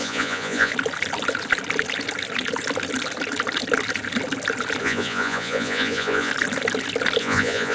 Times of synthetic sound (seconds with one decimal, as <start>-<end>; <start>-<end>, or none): 0.0-0.7; 4.8-6.3; 7.2-7.7